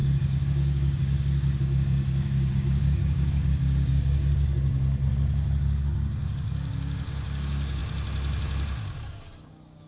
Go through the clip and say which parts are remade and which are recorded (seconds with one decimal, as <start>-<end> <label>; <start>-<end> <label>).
0.0-5.0 remade; 5.0-5.6 recorded; 5.6-7.8 remade; 7.8-8.8 recorded; 8.8-9.9 remade